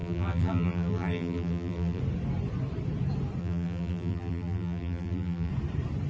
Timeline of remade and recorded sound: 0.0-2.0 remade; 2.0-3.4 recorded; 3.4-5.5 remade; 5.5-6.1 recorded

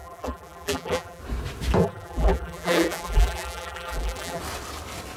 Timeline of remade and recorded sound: 0.0-1.2 remade; 1.2-1.8 recorded; 1.8-4.4 remade; 4.4-5.2 recorded

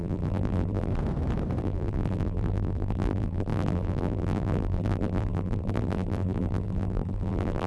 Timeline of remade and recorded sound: 0.0-0.9 remade; 0.9-1.6 recorded; 1.6-7.7 remade

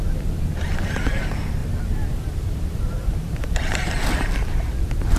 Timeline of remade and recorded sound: 0.0-1.6 recorded; 1.6-3.9 remade; 3.9-5.2 recorded

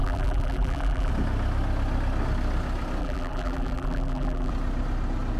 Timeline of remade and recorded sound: 0.0-1.1 remade; 1.1-3.0 recorded; 3.0-4.5 remade; 4.5-5.4 recorded

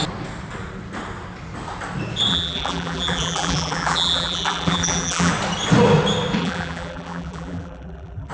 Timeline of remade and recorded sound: 0.0-2.3 recorded; 2.3-5.3 remade; 5.3-6.4 recorded; 6.4-8.3 remade

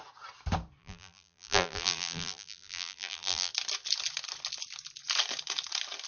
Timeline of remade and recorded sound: 0.0-0.8 recorded; 0.8-3.5 remade; 3.5-6.1 recorded